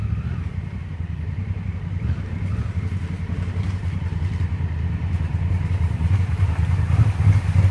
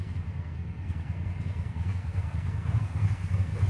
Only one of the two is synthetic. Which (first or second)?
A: second